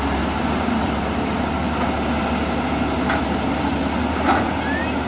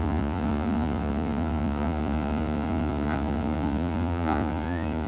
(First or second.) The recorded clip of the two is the first